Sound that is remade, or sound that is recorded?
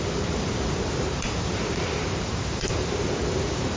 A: remade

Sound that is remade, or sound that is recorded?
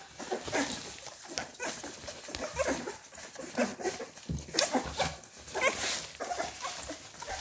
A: recorded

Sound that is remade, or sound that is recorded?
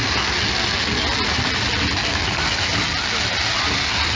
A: recorded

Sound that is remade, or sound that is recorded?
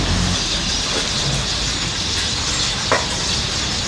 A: recorded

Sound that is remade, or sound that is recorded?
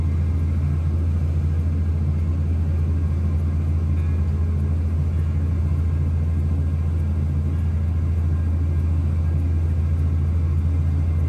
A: recorded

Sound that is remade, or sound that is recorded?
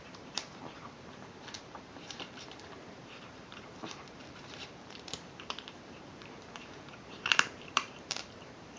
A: remade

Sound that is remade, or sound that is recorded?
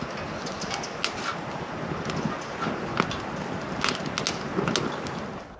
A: recorded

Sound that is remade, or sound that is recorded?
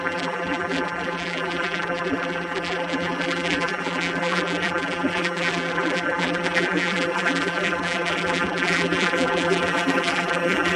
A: remade